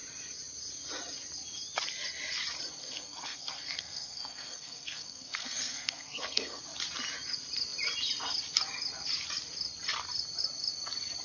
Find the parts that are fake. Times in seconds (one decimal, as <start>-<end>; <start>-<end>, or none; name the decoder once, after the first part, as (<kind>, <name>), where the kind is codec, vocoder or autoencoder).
2.8-6.6 (codec, SNAC)

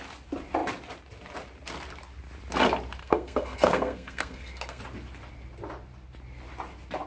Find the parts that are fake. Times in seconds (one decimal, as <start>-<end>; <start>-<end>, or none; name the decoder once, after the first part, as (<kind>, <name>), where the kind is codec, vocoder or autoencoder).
3.0-4.8 (codec, SNAC)

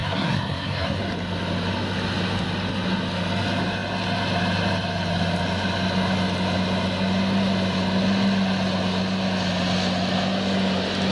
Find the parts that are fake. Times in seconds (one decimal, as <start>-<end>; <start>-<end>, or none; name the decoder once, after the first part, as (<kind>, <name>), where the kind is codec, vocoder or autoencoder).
0.0-1.0 (codec, SNAC)

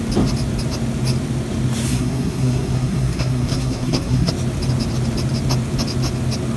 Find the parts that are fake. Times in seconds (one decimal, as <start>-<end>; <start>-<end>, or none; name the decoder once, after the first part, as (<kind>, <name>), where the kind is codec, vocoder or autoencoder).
1.9-4.3 (codec, SNAC)

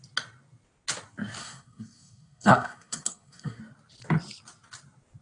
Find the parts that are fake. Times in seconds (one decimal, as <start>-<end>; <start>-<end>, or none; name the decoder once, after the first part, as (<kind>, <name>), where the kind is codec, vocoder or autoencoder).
1.4-3.6 (codec, SNAC)